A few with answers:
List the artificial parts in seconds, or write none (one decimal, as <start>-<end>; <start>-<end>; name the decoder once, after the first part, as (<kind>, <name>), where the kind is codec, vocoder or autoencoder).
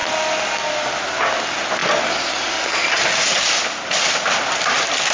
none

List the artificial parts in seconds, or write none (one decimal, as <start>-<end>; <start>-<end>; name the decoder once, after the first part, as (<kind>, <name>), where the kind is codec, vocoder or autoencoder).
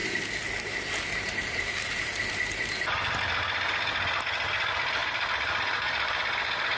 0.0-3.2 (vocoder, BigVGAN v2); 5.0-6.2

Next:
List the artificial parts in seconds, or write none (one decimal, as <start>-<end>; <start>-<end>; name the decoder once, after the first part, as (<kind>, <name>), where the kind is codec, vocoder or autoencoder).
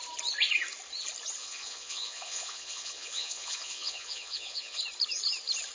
1.4-4.8 (vocoder, Vocos)